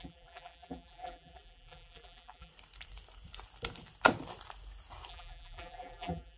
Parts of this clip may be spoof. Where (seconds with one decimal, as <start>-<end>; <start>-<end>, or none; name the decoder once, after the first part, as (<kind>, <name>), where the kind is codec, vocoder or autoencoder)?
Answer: 0.0-2.5 (vocoder, BigVGAN v2); 5.1-6.4